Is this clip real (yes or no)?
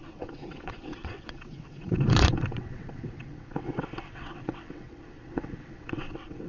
no